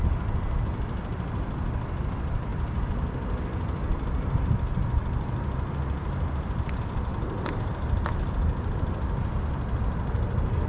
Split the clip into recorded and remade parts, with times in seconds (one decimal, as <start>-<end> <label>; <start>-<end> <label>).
0.0-10.7 recorded